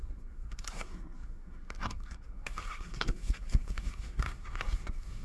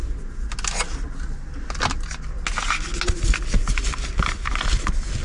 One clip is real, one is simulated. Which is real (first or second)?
second